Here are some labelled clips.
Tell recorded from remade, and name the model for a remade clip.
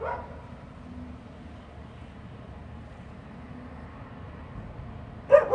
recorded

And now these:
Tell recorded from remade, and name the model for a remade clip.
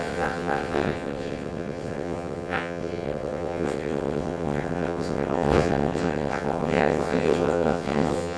remade, vocoder, WaveNeXt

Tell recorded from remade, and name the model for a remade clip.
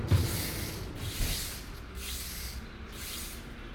recorded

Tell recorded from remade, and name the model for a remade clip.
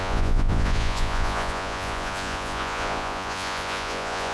remade, vocoder, Vocos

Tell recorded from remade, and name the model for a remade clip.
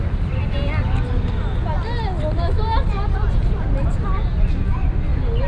recorded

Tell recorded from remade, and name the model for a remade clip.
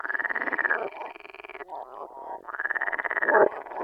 recorded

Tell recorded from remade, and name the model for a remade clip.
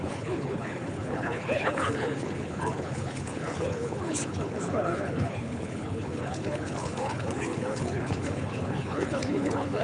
remade, codec, HILCodec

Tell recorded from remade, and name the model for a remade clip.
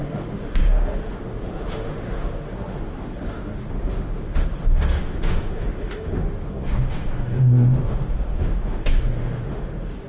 remade, autoencoder, DAC-VAE